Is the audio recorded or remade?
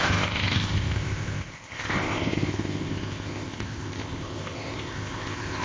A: remade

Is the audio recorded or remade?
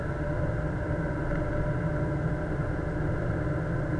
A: recorded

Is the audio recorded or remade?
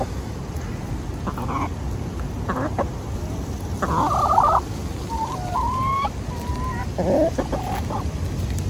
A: recorded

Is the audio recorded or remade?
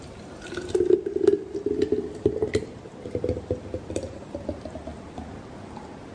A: recorded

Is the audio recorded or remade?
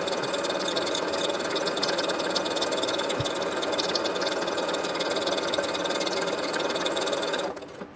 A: recorded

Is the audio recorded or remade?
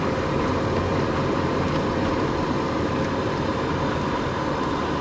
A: recorded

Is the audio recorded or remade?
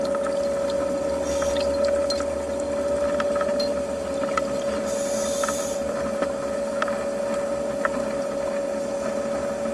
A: recorded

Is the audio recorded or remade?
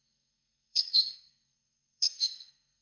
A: remade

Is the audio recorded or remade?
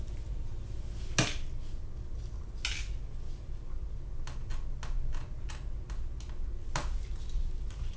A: recorded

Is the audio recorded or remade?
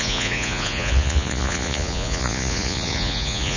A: remade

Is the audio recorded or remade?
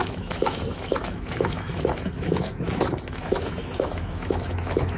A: remade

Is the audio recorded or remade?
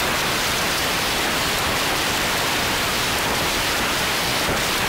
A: remade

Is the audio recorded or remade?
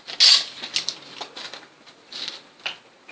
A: recorded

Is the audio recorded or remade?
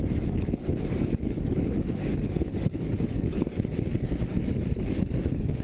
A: remade